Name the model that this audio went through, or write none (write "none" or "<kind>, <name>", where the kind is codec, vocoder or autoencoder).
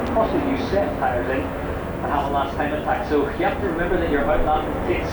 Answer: none